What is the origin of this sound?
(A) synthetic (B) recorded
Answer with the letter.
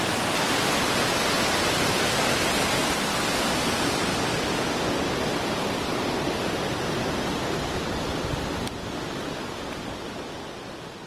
B